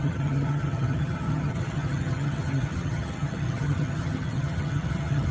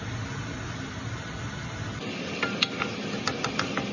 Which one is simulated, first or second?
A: first